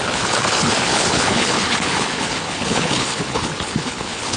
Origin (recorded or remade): remade